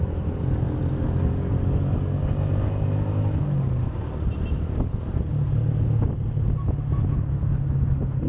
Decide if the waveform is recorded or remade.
recorded